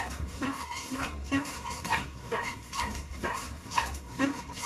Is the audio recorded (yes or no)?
no